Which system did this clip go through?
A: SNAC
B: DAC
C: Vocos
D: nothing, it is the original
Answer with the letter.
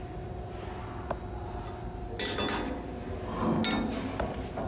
D